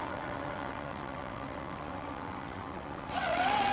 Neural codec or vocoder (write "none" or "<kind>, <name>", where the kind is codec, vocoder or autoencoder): vocoder, WaveNeXt